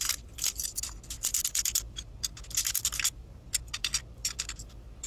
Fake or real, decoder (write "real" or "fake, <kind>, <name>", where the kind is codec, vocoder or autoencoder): fake, vocoder, BigVGAN v2